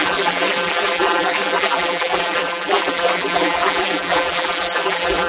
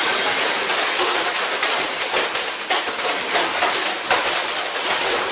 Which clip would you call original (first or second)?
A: second